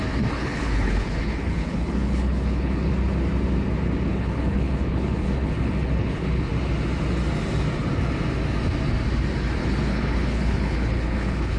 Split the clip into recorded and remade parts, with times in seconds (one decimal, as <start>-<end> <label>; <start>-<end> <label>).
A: 0.0-0.4 recorded; 0.4-2.9 remade; 2.9-4.1 recorded; 4.1-6.5 remade; 6.5-9.6 recorded; 9.6-11.6 remade